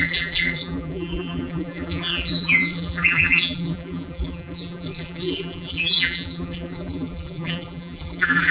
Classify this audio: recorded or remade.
remade